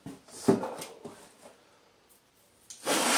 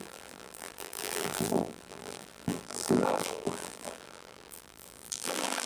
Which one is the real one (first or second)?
first